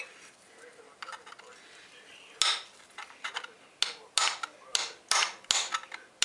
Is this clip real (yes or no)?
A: yes